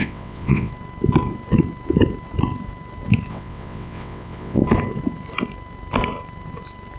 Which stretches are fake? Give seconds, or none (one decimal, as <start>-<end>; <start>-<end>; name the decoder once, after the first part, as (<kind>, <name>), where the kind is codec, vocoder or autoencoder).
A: 0.0-0.7 (vocoder, WaveNeXt); 3.3-4.6